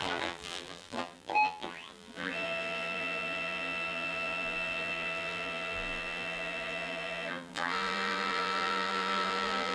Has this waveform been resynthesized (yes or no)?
yes